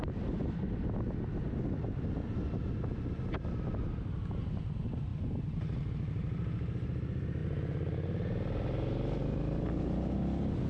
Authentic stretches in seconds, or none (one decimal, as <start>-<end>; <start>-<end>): 0.0-10.7